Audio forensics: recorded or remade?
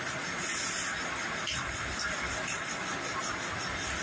recorded